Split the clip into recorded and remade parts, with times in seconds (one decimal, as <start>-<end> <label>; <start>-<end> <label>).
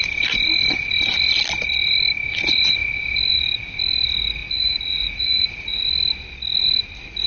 0.0-4.4 recorded; 4.4-5.8 remade; 5.8-7.3 recorded